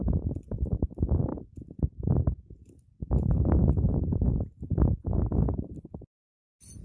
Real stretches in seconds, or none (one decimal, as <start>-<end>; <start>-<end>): 0.8-1.3; 5.2-6.8